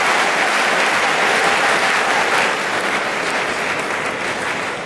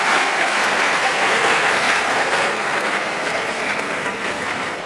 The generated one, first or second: second